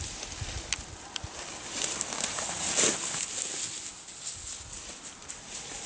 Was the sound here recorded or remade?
recorded